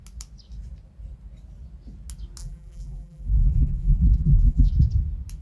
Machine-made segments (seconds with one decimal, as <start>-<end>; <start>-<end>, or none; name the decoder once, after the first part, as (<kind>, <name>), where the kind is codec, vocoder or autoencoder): 2.4-4.7 (vocoder, BigVGAN v2)